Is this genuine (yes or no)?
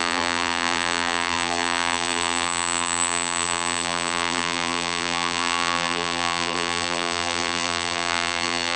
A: no